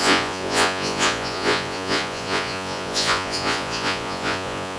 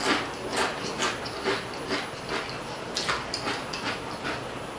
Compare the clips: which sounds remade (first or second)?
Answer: first